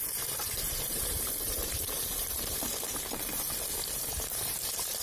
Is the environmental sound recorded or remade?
remade